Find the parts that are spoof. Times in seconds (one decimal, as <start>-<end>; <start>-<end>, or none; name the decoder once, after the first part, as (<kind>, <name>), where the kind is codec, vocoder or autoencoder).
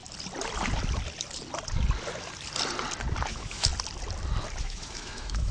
3.3-3.7 (autoencoder, DAC-VAE); 4.6-5.5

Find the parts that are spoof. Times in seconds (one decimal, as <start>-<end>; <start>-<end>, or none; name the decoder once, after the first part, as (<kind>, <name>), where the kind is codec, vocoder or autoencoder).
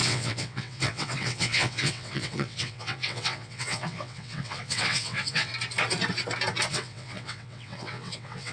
0.0-5.5 (vocoder, WaveNeXt); 6.7-8.5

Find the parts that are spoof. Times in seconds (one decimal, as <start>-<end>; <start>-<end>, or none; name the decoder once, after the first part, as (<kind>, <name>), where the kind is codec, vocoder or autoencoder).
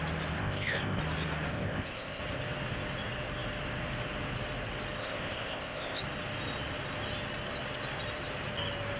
0.4-1.0 (codec, ZipCodec); 1.5-2.2; 5.0-6.0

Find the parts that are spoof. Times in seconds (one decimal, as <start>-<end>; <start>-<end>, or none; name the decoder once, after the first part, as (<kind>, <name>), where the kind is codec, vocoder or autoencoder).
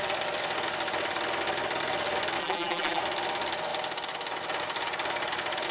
2.4-3.0 (vocoder, BigVGAN v2)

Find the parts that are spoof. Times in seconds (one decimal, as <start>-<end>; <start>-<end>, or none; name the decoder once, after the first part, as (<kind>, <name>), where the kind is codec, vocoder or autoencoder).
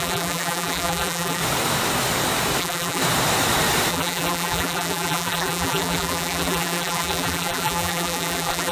0.0-1.4 (vocoder, BigVGAN v2); 2.6-3.0; 3.9-8.7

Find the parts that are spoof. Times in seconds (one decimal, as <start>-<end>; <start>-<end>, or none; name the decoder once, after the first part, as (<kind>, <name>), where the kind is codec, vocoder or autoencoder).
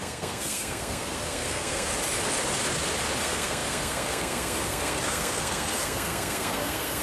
0.0-1.9 (codec, SNAC); 3.2-7.0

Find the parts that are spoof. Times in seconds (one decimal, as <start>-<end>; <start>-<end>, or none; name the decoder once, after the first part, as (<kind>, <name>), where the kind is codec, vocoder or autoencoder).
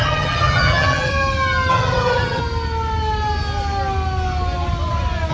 0.0-1.1 (vocoder, HiFi-GAN); 1.7-2.4